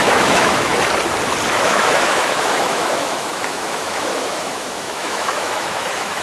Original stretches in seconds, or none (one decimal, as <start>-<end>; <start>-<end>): 0.7-1.5